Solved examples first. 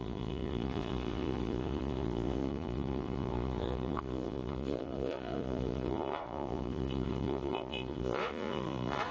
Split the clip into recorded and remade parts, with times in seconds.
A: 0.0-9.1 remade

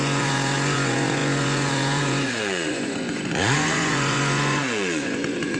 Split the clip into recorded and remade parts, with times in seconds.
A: 0.0-5.6 remade